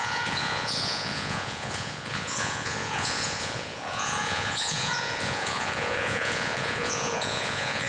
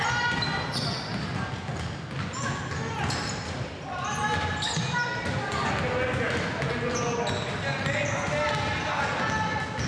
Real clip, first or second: second